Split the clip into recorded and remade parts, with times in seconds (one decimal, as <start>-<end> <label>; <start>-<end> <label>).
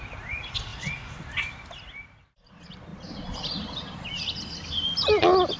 0.0-0.7 recorded; 0.7-2.5 remade; 2.5-5.6 recorded